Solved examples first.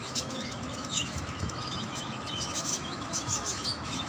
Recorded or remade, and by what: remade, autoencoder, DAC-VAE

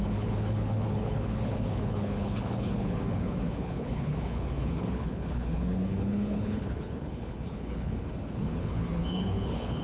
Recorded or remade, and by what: remade, codec, HILCodec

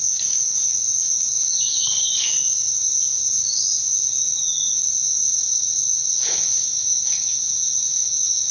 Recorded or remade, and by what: remade, codec, DAC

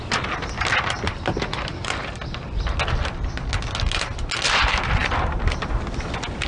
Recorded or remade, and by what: recorded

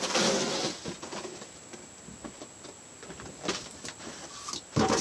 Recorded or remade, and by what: recorded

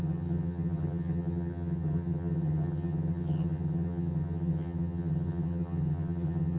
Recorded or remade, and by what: remade, vocoder, HiFi-GAN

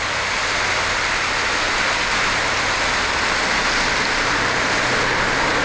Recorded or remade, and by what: recorded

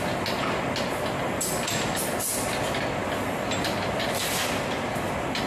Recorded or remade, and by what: recorded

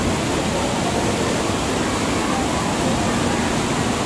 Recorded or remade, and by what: recorded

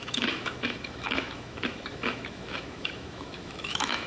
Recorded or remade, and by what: remade, autoencoder, DAC-VAE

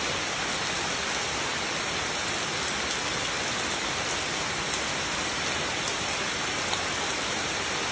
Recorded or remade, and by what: recorded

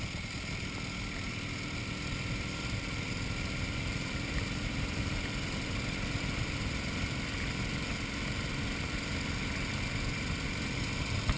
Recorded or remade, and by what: remade, vocoder, BigVGAN v2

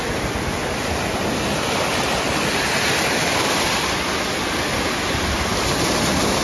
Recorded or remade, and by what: recorded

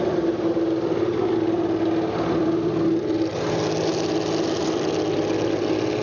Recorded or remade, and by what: recorded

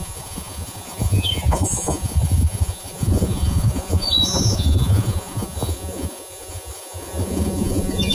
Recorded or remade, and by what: remade, vocoder, Vocos